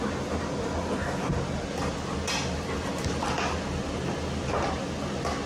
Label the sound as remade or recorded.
recorded